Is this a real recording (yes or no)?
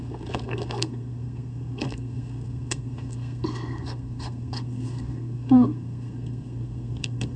no